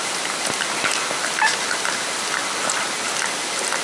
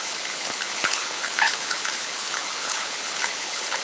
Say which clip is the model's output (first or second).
second